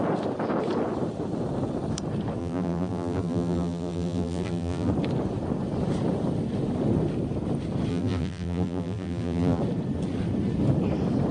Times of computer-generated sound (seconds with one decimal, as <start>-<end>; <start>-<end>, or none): 2.4-4.9; 7.9-9.6